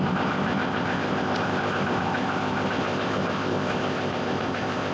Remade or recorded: remade